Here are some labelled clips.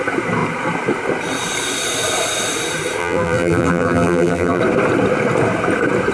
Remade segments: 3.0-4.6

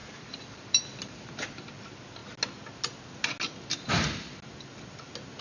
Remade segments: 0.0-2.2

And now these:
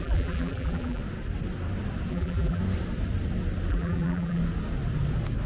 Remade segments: 0.0-1.0; 2.1-2.6; 3.7-4.4